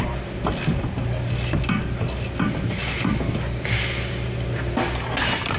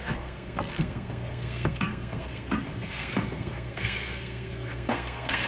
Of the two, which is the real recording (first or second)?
first